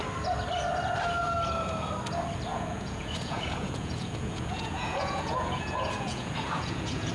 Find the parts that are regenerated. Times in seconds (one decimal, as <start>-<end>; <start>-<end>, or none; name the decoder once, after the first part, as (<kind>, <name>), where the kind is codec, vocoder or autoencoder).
2.5-7.1 (vocoder, Vocos)